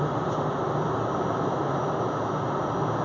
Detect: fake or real real